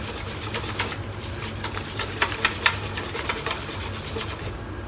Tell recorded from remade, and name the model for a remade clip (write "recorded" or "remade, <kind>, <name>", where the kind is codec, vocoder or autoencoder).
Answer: recorded